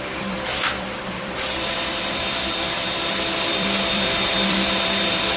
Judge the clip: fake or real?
fake